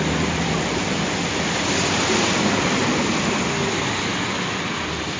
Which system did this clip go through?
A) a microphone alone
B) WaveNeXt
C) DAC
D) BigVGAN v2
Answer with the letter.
A